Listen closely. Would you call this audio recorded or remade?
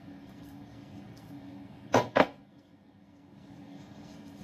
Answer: remade